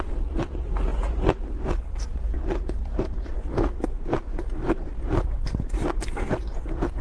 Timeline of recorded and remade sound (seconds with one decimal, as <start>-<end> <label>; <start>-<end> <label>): 0.0-4.4 recorded; 4.4-6.3 remade; 6.3-7.0 recorded